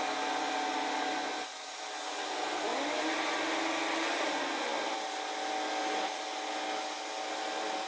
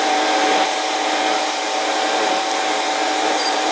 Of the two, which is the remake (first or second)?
second